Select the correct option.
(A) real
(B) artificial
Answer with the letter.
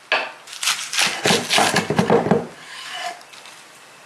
A